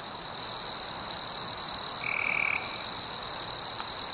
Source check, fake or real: real